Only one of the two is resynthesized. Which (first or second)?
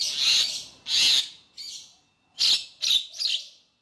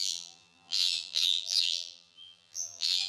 second